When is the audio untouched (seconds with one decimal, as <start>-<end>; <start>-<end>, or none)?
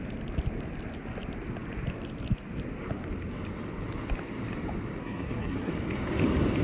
0.0-5.0; 5.7-6.6